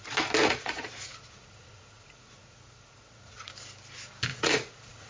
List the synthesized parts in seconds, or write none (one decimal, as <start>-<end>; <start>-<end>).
0.4-3.5; 4.3-5.1